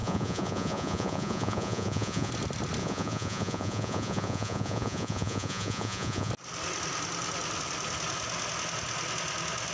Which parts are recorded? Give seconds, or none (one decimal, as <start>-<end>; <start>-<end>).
2.3-2.8; 6.3-9.7